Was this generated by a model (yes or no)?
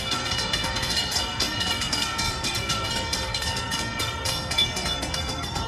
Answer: yes